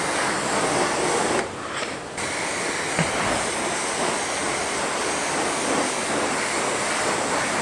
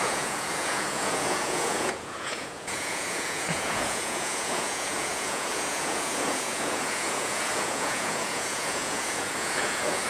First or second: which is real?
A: first